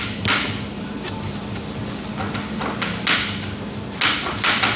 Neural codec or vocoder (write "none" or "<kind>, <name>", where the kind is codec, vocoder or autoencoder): none